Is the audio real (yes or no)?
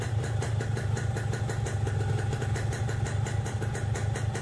yes